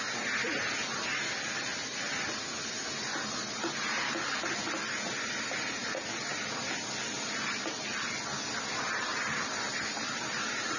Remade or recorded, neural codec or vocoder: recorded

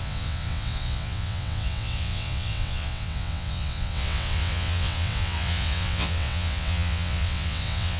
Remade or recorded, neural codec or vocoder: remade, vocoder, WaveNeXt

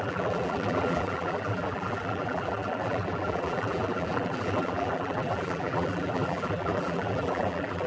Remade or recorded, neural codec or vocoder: remade, vocoder, BigVGAN v2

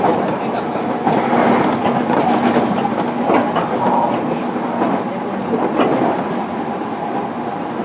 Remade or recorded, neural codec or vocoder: recorded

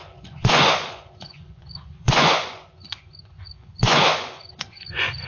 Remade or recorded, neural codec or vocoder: remade, vocoder, Vocos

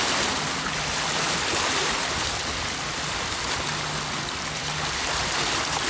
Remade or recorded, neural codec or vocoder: recorded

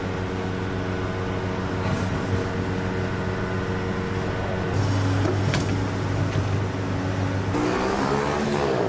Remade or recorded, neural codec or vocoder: recorded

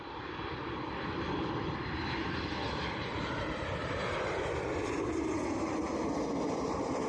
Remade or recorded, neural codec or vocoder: recorded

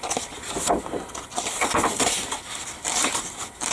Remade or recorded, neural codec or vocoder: recorded